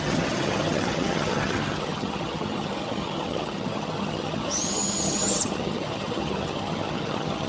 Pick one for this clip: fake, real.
fake